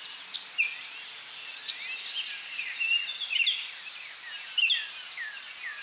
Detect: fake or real real